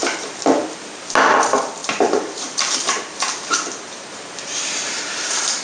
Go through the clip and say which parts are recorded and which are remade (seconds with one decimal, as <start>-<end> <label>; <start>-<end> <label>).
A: 0.0-0.6 remade; 0.6-1.8 recorded; 1.8-5.6 remade